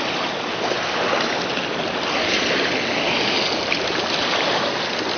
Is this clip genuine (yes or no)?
yes